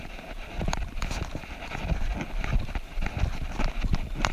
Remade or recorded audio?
recorded